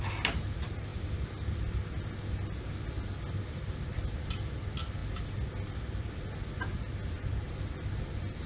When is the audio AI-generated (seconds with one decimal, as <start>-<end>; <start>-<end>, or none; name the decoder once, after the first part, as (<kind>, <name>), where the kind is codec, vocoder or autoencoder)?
none